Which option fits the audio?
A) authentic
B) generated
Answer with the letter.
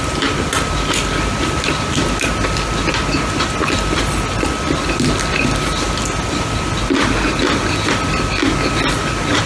A